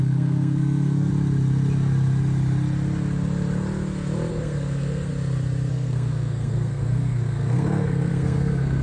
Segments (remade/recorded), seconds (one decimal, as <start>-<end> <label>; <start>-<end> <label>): 0.0-1.1 remade; 1.1-4.3 recorded; 4.3-5.1 remade; 5.1-5.7 recorded; 5.7-8.8 remade